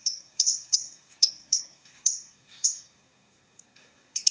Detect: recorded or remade remade